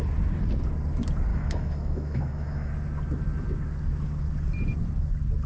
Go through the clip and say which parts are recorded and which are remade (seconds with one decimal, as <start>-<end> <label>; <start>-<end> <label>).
0.0-1.3 recorded; 1.3-2.7 remade; 2.7-5.5 recorded